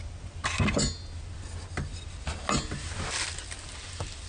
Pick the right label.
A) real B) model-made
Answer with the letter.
A